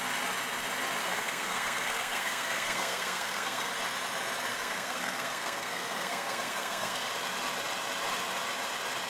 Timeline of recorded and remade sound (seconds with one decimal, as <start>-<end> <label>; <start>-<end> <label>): 0.0-1.0 recorded; 1.0-3.7 remade; 3.7-4.5 recorded; 4.5-7.1 remade; 7.1-9.1 recorded